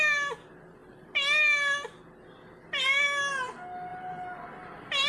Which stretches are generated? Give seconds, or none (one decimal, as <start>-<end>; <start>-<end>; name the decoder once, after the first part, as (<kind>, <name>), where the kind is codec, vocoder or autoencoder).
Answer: none